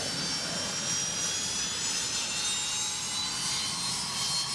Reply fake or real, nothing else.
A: real